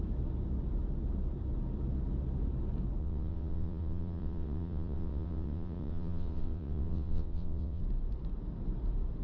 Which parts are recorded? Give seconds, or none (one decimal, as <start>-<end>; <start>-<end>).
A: 0.0-3.0; 7.8-9.2